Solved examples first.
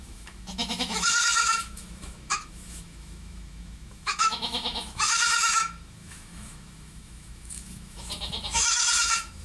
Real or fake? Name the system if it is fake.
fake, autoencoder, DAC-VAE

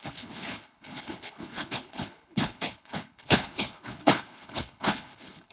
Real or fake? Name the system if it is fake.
fake, codec, HILCodec